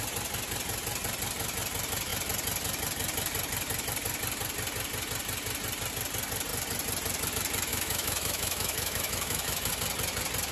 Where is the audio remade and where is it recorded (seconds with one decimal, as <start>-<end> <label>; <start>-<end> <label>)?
0.0-7.7 recorded; 7.7-9.7 remade; 9.7-10.5 recorded